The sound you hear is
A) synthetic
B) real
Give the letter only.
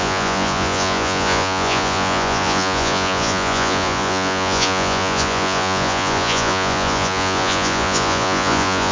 A